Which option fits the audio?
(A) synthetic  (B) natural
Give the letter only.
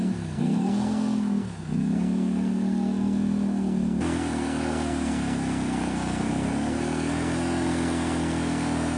A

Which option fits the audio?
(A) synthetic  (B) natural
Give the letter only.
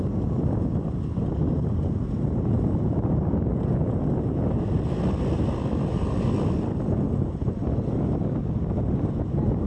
B